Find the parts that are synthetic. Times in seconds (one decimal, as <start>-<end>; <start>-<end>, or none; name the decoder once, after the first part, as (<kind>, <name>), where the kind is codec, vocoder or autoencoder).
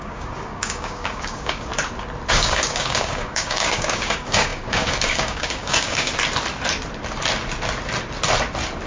0.0-1.7 (codec, DAC); 2.3-6.1